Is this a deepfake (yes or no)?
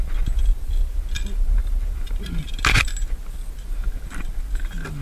no